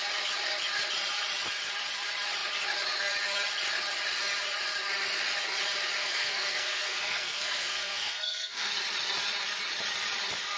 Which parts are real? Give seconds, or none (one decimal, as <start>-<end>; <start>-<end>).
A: 0.0-6.0; 8.7-10.6